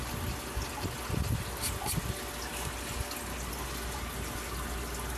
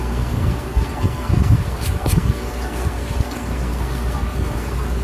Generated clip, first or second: second